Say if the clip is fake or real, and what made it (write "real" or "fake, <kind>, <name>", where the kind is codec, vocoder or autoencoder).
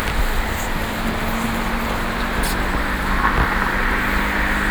real